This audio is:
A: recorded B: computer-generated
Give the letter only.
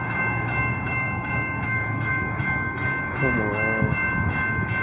B